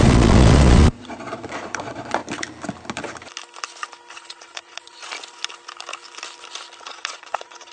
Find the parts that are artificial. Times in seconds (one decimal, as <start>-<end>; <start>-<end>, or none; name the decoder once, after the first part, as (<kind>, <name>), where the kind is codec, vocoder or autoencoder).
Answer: 0.0-2.2 (vocoder, Vocos); 4.1-5.0; 6.8-7.7